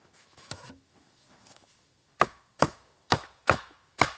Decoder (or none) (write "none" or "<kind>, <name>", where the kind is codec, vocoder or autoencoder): autoencoder, DAC-VAE